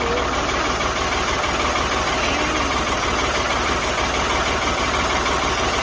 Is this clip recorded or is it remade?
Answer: recorded